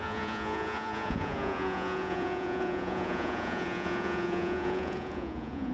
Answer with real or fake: fake